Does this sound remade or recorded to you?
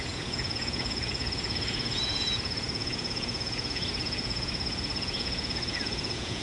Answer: remade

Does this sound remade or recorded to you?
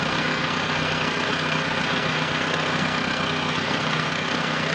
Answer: remade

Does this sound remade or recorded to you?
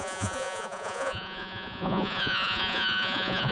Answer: remade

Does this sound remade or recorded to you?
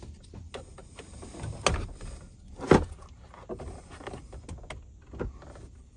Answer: recorded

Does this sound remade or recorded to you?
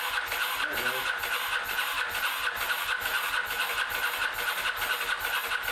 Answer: recorded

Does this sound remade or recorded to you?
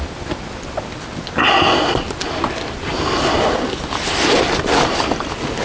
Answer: recorded